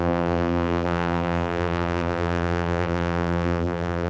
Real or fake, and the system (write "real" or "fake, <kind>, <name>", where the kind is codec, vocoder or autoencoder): fake, vocoder, BigVGAN v2